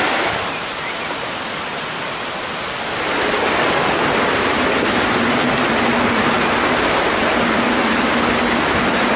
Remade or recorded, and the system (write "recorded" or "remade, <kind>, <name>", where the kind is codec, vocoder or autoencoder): recorded